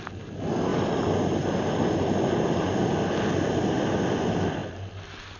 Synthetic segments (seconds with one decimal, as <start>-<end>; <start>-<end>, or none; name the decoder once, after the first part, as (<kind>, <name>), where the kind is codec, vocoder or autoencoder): none